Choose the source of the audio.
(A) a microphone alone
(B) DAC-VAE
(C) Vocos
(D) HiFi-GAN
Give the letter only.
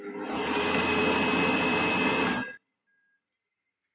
A